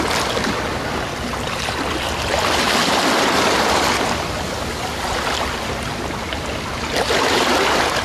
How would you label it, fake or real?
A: real